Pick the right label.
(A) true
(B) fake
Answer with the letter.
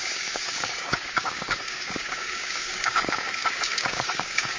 B